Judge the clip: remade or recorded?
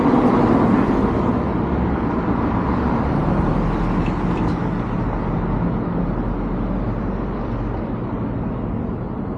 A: recorded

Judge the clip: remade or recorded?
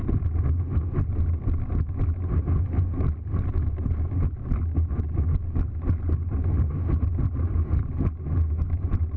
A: recorded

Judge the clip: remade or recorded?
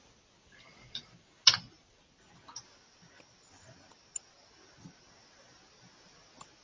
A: recorded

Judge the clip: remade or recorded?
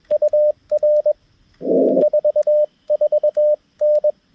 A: recorded